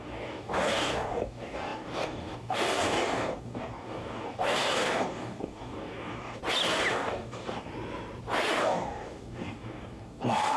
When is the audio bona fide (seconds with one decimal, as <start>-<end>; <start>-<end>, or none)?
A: 6.4-6.9; 7.7-8.6